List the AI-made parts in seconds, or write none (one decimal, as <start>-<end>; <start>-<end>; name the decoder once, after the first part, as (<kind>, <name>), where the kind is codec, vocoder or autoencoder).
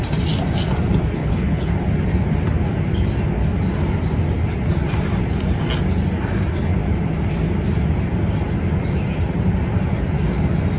1.2-1.7 (codec, HILCodec)